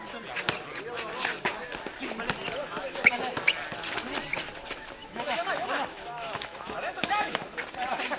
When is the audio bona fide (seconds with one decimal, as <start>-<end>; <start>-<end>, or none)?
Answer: 0.0-2.6; 3.2-5.0; 7.6-8.2